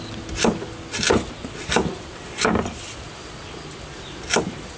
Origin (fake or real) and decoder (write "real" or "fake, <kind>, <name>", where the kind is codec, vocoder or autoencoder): real